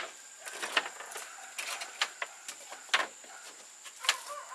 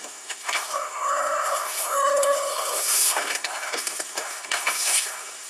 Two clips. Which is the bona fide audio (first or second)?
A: first